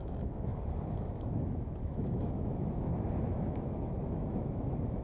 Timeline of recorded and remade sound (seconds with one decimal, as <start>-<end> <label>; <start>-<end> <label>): 0.0-5.0 remade